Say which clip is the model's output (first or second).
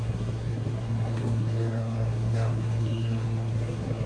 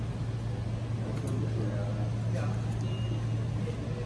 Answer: first